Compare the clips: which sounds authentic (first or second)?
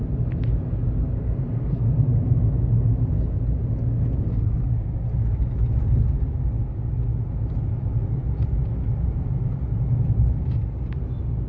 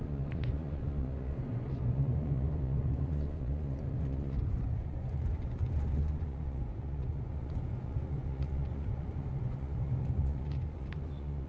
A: first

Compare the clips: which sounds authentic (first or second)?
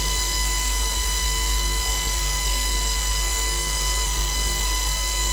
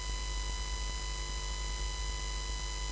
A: second